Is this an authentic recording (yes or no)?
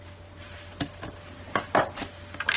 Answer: yes